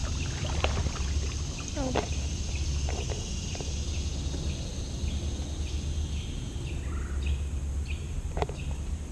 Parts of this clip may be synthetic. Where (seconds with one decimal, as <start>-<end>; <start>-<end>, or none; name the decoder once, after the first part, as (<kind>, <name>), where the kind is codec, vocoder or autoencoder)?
none